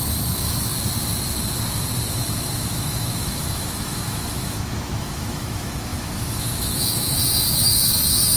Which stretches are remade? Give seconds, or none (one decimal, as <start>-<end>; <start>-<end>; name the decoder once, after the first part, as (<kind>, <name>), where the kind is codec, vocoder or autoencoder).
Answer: 0.0-0.7 (autoencoder, DAC-VAE); 2.1-8.4

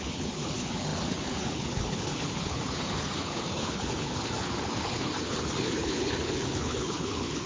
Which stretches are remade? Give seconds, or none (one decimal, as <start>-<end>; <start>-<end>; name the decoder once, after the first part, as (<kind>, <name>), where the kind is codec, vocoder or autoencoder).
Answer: 0.0-7.5 (codec, HILCodec)

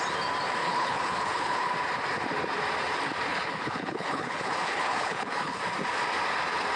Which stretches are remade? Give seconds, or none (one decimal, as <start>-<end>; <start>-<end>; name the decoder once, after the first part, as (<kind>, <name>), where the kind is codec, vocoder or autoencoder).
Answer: 0.6-1.7 (codec, HILCodec); 3.3-5.6

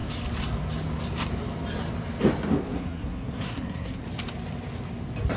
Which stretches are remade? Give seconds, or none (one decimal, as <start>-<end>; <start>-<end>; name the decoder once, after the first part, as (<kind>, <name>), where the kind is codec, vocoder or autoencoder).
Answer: 2.6-4.0 (codec, SNAC)

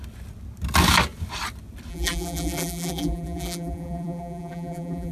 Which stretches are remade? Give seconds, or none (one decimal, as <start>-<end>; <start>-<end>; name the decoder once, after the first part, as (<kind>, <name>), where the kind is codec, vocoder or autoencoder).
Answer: 1.9-5.1 (vocoder, BigVGAN v2)